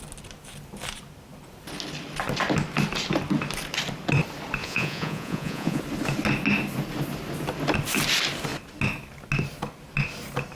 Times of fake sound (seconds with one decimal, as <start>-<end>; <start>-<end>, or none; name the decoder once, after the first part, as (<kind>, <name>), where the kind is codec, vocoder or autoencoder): 4.6-5.8 (vocoder, Vocos)